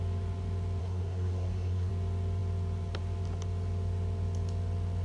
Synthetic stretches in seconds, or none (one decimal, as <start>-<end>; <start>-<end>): 0.8-1.9